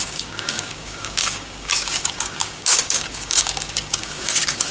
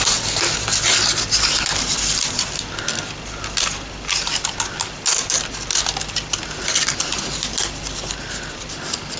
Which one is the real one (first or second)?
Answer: second